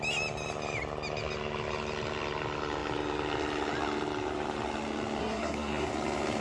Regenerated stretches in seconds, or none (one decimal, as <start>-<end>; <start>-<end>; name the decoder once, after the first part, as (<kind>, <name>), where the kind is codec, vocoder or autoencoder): 5.2-5.9 (codec, SNAC)